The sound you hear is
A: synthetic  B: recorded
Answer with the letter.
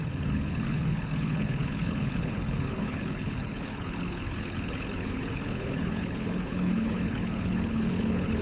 A